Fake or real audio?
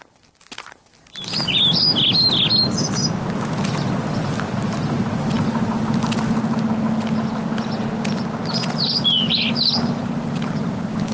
real